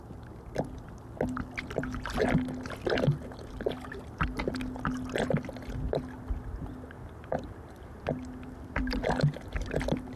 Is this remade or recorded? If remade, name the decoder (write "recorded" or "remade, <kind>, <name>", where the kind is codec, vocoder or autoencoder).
recorded